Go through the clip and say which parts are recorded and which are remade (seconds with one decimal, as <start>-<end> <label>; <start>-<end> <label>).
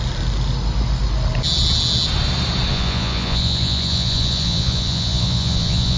0.0-2.7 recorded; 2.7-6.0 remade